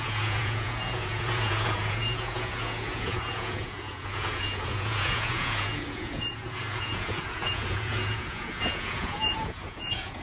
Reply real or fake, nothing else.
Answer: fake